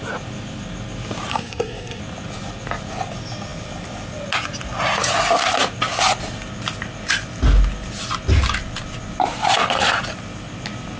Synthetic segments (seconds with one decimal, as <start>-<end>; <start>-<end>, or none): 1.3-2.0